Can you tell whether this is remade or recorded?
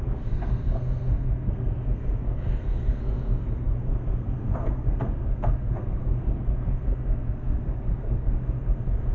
remade